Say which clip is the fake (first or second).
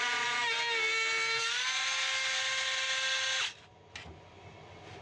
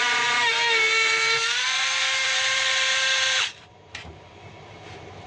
second